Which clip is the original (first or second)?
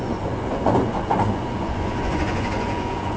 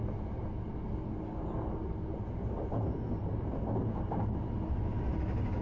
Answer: second